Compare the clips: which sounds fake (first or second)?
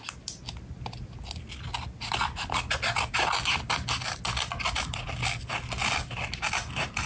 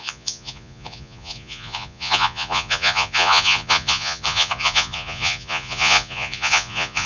second